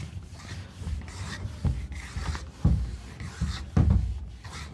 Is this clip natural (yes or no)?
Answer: yes